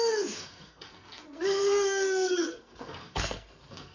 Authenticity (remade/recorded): remade